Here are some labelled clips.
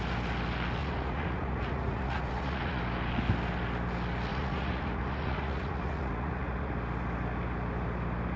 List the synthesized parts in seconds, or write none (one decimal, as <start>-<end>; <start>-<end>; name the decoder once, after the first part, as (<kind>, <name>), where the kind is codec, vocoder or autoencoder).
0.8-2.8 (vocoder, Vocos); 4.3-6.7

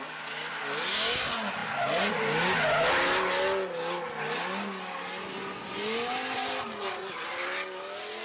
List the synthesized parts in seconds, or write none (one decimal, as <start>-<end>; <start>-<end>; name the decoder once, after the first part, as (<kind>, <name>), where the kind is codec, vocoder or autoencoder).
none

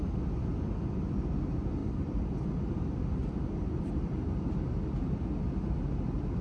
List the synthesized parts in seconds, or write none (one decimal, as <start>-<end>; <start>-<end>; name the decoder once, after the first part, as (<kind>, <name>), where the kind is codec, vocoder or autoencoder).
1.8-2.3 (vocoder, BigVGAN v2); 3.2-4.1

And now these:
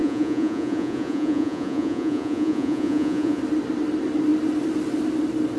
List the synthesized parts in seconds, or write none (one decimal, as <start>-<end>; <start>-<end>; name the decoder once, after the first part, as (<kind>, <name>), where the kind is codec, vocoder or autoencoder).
0.0-3.4 (vocoder, Vocos)

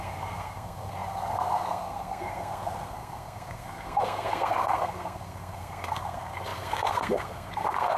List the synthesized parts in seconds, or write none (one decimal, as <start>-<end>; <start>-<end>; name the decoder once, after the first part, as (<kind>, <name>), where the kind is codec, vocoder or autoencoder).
0.0-8.0 (codec, SNAC)

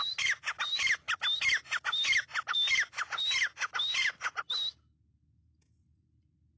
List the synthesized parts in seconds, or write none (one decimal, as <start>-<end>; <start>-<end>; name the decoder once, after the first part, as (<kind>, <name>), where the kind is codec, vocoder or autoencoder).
none

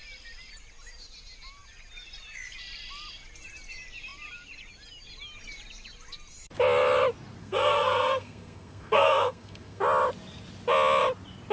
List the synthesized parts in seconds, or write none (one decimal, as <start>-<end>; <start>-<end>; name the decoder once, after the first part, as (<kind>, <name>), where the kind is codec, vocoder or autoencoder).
7.4-9.8 (codec, SNAC)

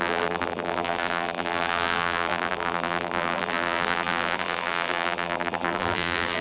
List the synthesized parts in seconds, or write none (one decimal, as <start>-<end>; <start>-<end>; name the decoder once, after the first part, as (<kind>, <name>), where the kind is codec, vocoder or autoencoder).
0.0-6.4 (vocoder, BigVGAN v2)